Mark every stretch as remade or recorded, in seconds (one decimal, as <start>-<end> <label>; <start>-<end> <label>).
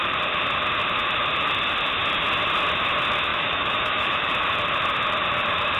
0.0-3.3 recorded; 3.3-4.3 remade; 4.3-5.8 recorded